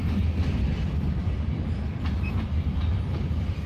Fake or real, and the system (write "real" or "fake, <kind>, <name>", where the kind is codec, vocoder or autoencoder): real